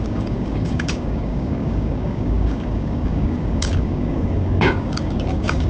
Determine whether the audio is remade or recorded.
remade